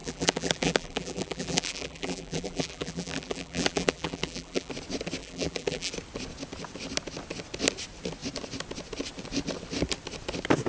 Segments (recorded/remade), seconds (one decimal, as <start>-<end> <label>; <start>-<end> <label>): 0.0-4.7 remade; 4.7-5.2 recorded; 5.2-5.9 remade; 5.9-10.7 recorded